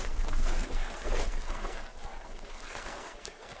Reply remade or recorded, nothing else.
remade